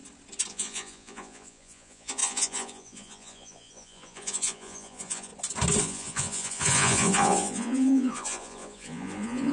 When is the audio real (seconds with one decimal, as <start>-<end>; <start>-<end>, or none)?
0.0-0.5; 5.3-5.8